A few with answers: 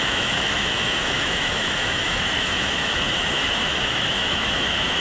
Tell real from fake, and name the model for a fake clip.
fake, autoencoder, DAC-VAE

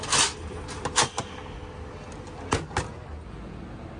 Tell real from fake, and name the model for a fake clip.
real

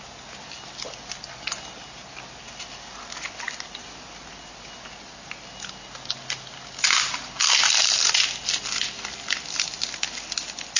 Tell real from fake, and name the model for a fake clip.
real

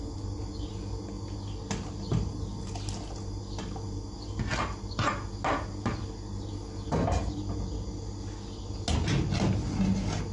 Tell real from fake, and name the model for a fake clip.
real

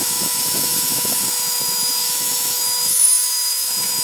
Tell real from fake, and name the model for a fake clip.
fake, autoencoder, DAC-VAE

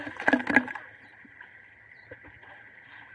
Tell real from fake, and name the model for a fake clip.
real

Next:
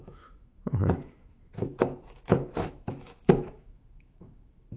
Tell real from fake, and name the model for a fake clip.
fake, autoencoder, DAC-VAE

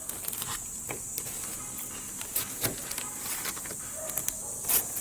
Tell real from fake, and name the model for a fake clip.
real